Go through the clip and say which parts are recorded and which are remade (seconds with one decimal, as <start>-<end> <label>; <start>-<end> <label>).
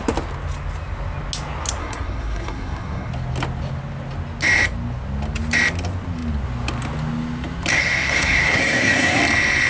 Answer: 0.0-1.8 recorded; 1.8-3.1 remade; 3.1-7.7 recorded; 7.7-9.2 remade; 9.2-9.7 recorded